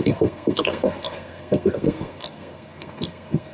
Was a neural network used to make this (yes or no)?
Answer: yes